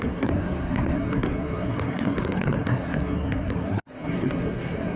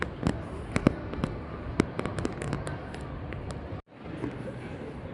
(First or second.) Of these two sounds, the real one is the second